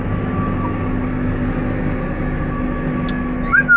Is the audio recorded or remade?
recorded